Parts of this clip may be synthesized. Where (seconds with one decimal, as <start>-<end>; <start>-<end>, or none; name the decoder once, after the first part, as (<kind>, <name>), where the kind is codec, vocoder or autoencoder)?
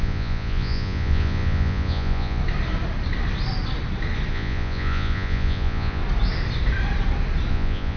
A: 0.0-2.4 (vocoder, Vocos); 4.3-6.0; 7.5-8.0